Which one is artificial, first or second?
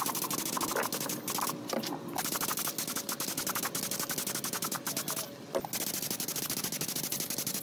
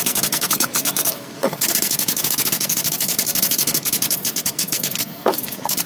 second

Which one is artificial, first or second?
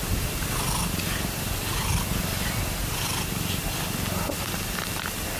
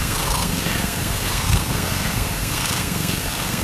second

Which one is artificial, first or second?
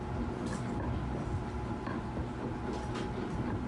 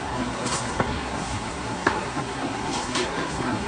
second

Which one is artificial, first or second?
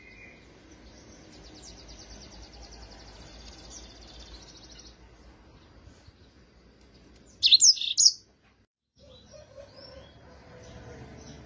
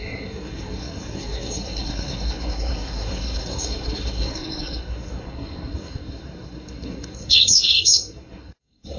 second